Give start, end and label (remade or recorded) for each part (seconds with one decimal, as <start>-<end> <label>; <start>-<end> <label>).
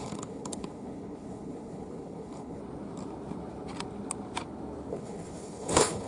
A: 0.0-2.6 remade; 2.6-4.9 recorded; 4.9-6.1 remade